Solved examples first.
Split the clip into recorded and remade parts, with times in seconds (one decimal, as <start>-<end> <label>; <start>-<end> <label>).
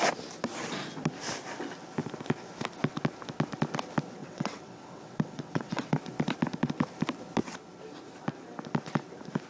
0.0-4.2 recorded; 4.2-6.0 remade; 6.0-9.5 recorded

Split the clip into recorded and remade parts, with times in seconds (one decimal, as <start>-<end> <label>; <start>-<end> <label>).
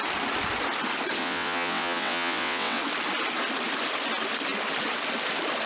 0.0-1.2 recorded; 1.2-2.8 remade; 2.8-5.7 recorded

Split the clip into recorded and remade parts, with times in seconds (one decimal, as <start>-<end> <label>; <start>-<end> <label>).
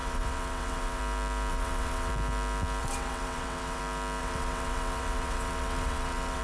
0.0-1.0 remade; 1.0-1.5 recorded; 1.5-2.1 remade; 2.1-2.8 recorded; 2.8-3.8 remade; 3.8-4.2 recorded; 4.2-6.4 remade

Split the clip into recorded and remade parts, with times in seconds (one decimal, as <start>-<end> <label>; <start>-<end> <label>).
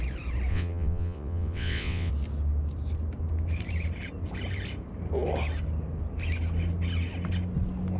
0.0-0.5 recorded; 0.5-2.1 remade; 2.1-8.0 recorded